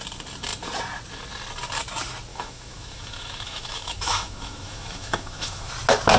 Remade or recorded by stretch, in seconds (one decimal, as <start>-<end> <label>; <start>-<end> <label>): 0.0-2.3 recorded; 2.3-5.7 remade; 5.7-6.2 recorded